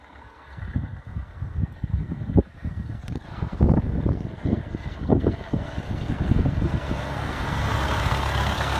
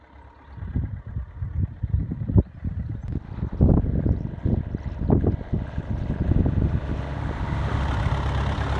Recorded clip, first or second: second